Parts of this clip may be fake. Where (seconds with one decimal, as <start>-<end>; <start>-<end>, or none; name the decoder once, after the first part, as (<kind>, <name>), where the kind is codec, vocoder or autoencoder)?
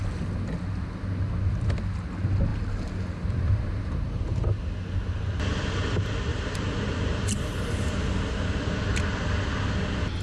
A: 2.5-4.6 (vocoder, BigVGAN v2); 6.3-8.6